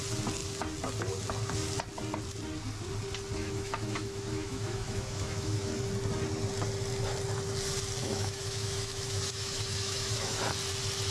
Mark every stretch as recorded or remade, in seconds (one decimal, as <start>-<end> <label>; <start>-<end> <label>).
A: 0.0-3.4 recorded; 3.4-5.7 remade; 5.7-8.0 recorded; 8.0-10.4 remade; 10.4-11.1 recorded